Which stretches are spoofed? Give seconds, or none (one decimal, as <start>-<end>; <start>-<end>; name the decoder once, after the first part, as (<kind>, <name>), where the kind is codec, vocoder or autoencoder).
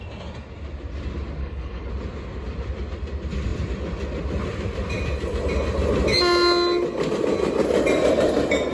1.4-1.9 (codec, HILCodec)